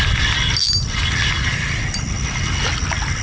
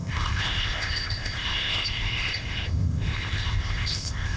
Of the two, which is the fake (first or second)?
second